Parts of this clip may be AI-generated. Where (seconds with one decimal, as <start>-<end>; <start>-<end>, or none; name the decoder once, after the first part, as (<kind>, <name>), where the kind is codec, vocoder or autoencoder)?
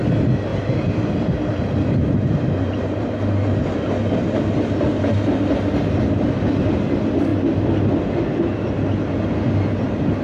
0.5-3.1 (vocoder, BigVGAN v2)